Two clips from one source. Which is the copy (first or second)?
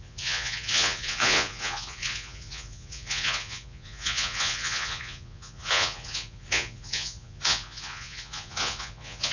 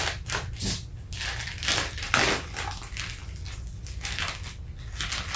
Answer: first